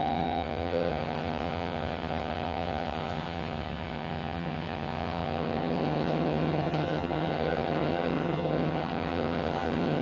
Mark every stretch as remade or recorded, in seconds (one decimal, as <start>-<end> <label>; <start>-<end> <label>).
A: 0.0-10.0 remade